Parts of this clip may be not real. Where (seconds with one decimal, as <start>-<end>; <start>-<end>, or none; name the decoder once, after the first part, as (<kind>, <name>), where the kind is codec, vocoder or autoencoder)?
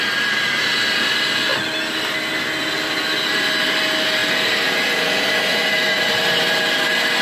3.3-3.8 (vocoder, BigVGAN v2); 4.2-6.6